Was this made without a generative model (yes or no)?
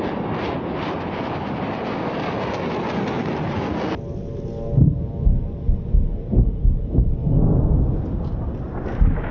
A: yes